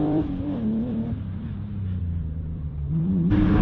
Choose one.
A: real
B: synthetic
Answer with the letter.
B